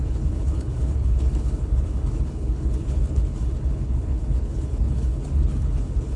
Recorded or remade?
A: remade